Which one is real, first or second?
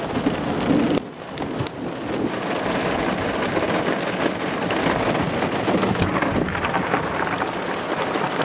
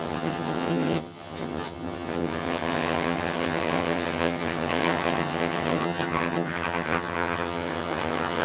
first